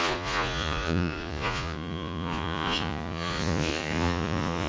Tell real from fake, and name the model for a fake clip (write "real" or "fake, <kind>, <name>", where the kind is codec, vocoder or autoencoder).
fake, vocoder, Vocos